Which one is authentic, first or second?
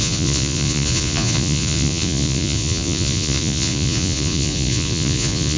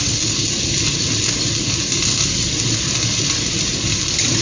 second